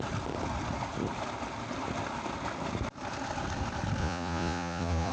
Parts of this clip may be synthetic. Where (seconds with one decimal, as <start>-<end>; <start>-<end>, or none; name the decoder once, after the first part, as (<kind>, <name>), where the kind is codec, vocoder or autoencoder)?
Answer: 4.0-5.1 (vocoder, Vocos)